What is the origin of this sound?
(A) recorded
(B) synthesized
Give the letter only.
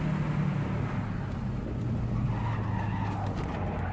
A